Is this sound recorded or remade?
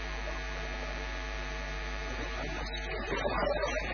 remade